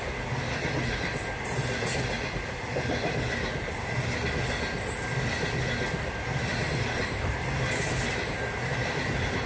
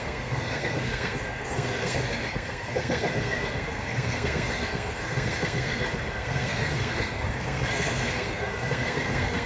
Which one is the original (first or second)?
first